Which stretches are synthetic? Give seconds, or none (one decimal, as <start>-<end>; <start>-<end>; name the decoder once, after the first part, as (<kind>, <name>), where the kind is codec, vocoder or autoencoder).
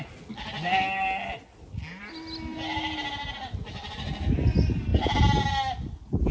none